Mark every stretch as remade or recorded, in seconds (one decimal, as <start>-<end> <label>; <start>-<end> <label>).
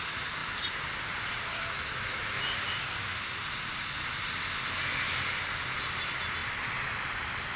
0.0-1.5 recorded; 1.5-2.4 remade; 2.4-7.6 recorded